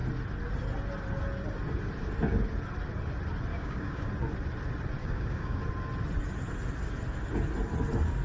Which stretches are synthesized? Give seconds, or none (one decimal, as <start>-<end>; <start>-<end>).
3.5-4.1; 5.0-5.6